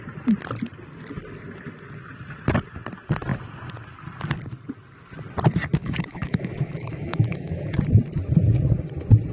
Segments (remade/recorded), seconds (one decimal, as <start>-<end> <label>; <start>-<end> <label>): 0.0-5.8 recorded; 5.8-7.8 remade; 7.8-9.3 recorded